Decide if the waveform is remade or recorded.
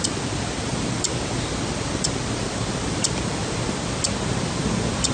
recorded